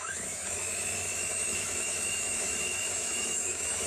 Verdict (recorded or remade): remade